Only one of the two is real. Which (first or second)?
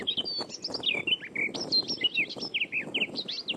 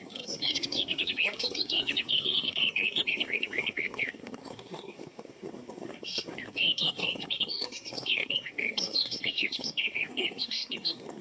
first